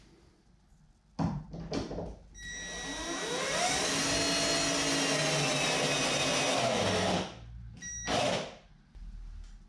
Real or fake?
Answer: real